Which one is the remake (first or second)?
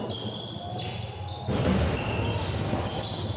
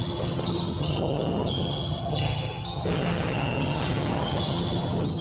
second